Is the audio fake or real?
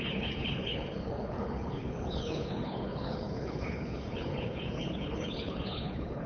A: fake